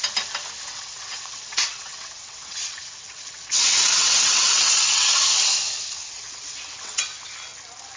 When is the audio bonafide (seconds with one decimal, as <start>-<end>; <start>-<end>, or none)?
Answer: 0.0-0.7; 5.2-6.0; 7.0-8.0